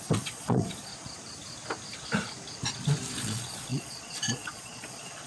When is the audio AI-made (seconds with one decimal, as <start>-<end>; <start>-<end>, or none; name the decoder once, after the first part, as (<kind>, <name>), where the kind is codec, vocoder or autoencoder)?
0.0-0.9 (vocoder, Vocos); 3.2-5.3